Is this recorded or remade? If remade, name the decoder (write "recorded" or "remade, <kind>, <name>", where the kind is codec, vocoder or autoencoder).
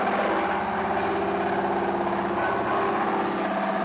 recorded